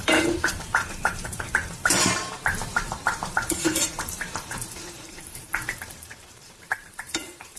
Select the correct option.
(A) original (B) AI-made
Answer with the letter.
B